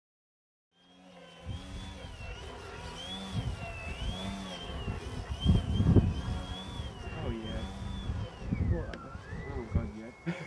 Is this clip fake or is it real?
real